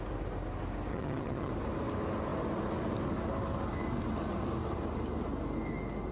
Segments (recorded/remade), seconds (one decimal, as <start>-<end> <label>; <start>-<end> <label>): 0.0-0.9 recorded; 0.9-1.5 remade; 1.5-6.1 recorded